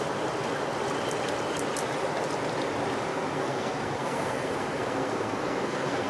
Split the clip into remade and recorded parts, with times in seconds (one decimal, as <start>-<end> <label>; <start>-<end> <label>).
0.0-3.1 recorded; 3.1-6.1 remade